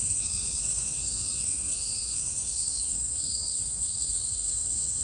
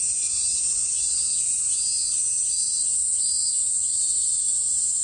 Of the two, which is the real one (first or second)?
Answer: second